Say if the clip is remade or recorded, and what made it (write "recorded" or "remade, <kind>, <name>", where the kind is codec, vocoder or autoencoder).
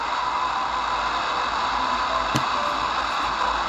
recorded